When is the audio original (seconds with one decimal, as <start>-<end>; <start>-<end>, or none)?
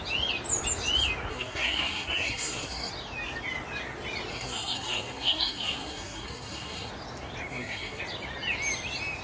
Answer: 0.0-1.3; 2.9-4.3; 6.9-7.5; 8.0-9.2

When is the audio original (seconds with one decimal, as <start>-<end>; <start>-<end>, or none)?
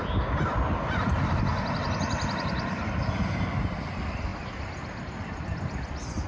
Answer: 0.0-6.3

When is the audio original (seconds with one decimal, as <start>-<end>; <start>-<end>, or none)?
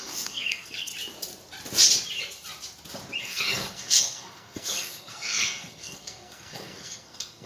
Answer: 0.9-3.2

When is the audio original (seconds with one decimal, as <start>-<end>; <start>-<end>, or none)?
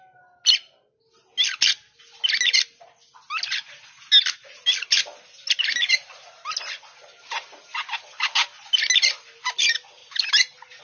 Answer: 0.0-10.0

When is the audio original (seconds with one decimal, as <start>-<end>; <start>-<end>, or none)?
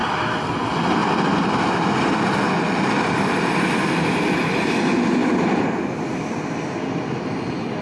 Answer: 0.0-7.8